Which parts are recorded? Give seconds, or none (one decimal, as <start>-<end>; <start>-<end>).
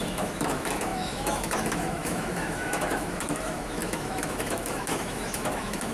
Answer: none